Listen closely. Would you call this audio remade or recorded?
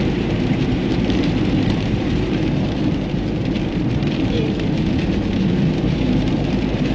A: remade